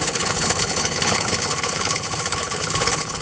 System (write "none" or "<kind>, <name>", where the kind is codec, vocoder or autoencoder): codec, HILCodec